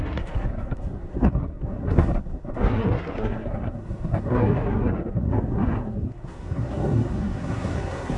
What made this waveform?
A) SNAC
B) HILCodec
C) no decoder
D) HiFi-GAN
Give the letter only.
A